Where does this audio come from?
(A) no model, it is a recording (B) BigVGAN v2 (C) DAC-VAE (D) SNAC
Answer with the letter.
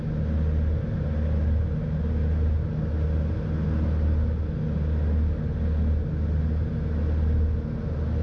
A